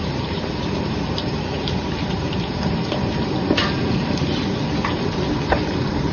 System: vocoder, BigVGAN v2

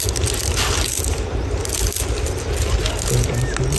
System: none